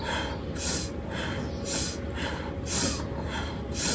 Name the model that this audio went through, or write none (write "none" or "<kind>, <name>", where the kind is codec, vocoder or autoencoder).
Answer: none